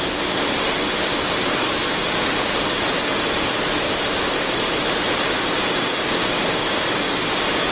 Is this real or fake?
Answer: real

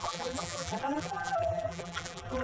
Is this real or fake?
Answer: fake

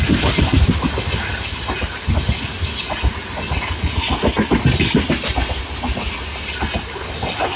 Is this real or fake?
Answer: real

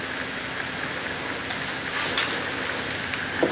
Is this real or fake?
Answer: real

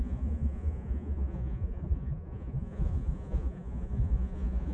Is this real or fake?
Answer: fake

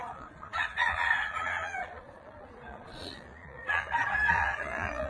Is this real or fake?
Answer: fake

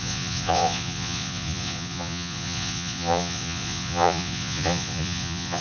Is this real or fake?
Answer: fake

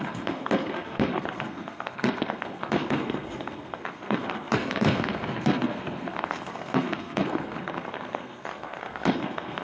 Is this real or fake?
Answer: fake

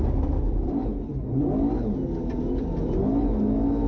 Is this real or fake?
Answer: real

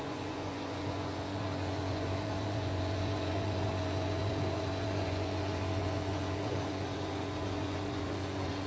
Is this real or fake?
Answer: fake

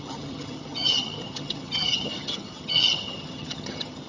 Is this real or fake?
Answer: fake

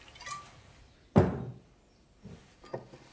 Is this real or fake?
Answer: real